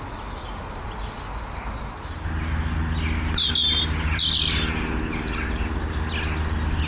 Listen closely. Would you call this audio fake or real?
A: real